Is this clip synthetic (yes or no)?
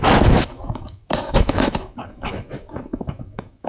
yes